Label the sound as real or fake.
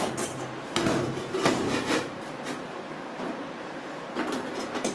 fake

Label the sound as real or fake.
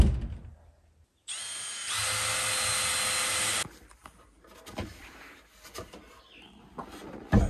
real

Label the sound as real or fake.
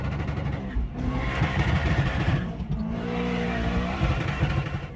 fake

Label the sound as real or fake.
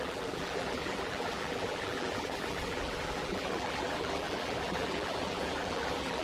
fake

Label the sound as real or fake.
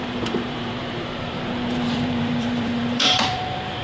fake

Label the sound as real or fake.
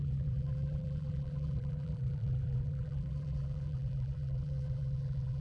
fake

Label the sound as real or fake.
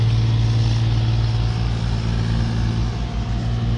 real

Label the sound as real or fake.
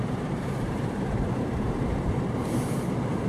fake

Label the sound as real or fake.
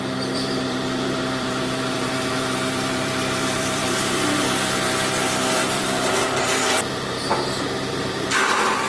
fake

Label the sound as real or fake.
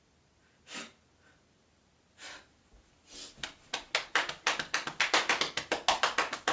real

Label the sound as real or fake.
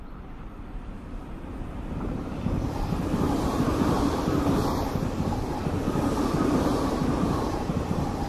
fake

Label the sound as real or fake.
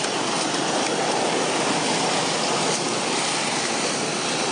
real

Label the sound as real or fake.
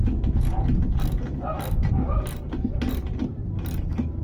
real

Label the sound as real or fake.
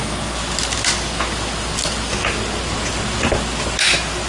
real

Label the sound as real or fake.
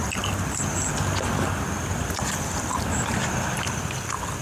real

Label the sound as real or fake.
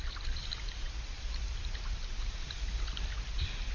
real